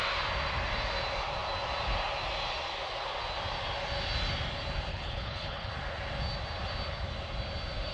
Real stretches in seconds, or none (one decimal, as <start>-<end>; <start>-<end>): 0.0-4.9; 5.7-7.9